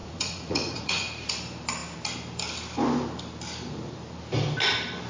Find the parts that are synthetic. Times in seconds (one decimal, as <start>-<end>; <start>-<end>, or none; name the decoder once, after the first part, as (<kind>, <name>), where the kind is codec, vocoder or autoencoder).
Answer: 0.0-1.3 (vocoder, Vocos)